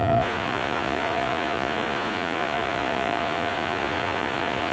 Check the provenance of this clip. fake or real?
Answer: fake